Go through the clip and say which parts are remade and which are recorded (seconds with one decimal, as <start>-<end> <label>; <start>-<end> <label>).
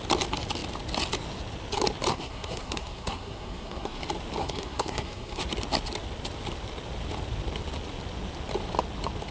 0.0-2.1 recorded; 2.1-4.0 remade; 4.0-4.4 recorded; 4.4-5.4 remade; 5.4-9.3 recorded